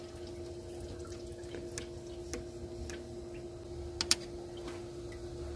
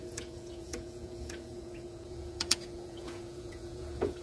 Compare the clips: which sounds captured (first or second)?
first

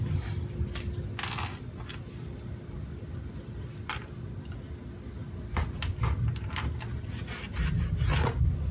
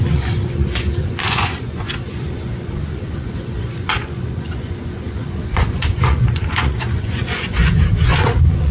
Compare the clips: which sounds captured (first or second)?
first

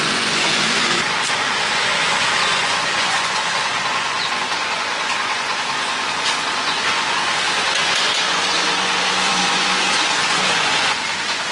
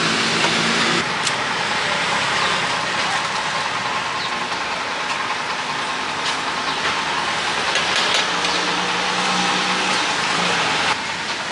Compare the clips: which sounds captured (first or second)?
second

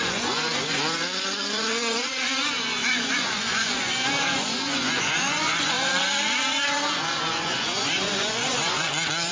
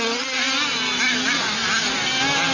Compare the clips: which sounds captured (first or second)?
second